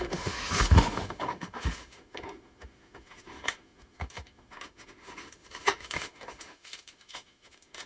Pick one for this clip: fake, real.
fake